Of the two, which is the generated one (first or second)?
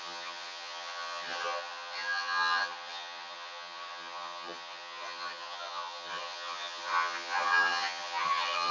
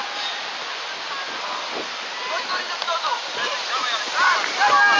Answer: first